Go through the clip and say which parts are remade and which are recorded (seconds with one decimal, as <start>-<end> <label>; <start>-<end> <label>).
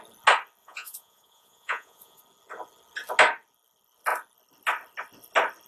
0.0-0.6 recorded; 0.6-2.2 remade; 2.2-5.7 recorded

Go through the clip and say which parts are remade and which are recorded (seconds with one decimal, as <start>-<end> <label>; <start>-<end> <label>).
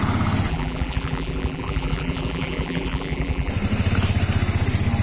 0.0-0.5 recorded; 0.5-3.5 remade; 3.5-5.0 recorded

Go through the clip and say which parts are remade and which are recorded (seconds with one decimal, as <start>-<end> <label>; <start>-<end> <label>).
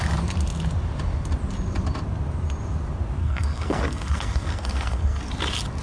0.0-3.2 recorded; 3.2-5.3 remade; 5.3-5.8 recorded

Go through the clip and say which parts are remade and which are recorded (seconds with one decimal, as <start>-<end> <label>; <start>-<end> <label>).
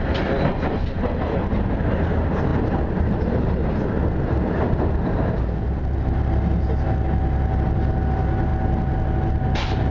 0.0-9.9 recorded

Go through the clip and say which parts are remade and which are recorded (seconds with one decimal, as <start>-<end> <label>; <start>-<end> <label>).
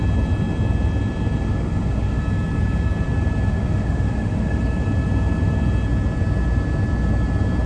0.0-1.5 recorded; 1.5-2.2 remade; 2.2-3.5 recorded; 3.5-4.6 remade; 4.6-7.7 recorded